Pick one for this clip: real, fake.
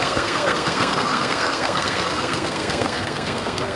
fake